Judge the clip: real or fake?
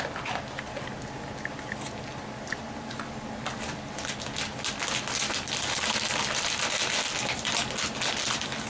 real